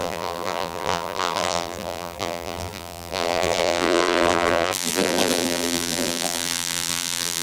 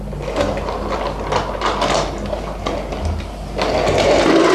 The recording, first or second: second